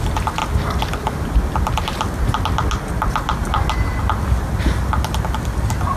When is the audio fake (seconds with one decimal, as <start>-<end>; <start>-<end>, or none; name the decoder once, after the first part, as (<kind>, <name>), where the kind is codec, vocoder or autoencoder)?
none